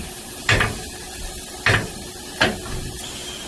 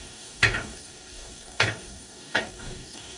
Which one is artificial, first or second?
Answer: second